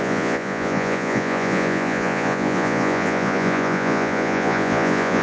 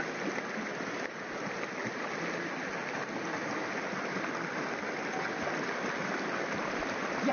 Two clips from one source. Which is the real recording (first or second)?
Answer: second